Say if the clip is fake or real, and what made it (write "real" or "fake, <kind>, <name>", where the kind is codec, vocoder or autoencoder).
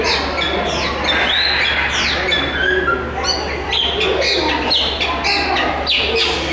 real